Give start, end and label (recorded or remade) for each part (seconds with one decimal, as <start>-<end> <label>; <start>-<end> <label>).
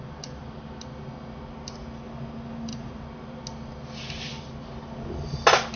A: 0.0-2.7 recorded; 2.7-3.4 remade; 3.4-5.8 recorded